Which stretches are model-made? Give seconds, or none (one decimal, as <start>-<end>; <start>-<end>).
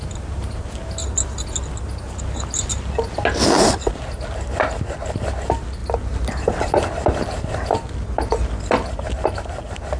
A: none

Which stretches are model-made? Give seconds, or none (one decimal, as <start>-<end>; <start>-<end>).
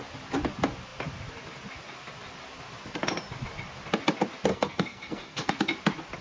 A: 4.5-5.5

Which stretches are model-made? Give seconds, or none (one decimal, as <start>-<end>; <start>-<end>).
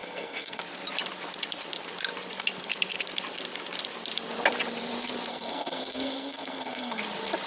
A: 0.0-0.6; 5.3-7.0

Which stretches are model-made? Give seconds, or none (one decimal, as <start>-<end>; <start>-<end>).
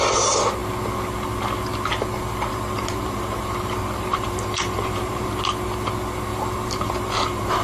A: 2.5-5.3; 6.3-7.6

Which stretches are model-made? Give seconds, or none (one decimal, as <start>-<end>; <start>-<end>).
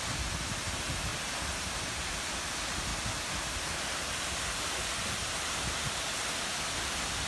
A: 1.1-2.3